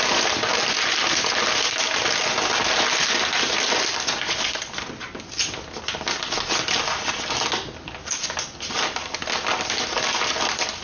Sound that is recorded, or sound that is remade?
recorded